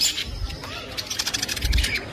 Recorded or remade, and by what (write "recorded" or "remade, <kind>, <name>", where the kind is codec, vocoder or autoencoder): recorded